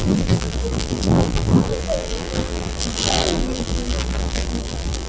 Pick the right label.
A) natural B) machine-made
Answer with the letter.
B